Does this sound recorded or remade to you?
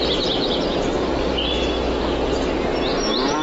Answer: recorded